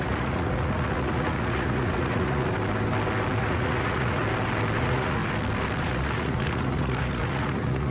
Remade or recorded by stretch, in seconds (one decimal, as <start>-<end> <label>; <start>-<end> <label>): 0.0-2.5 remade; 2.5-3.4 recorded; 3.4-4.2 remade; 4.2-4.8 recorded; 4.8-5.2 remade; 5.2-5.8 recorded; 5.8-7.9 remade